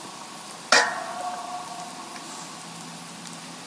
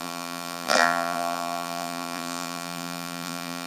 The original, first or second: first